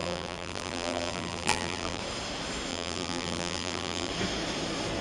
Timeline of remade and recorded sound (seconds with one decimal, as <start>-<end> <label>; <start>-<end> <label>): 0.0-2.0 remade; 2.0-2.7 recorded; 2.7-4.1 remade; 4.1-5.0 recorded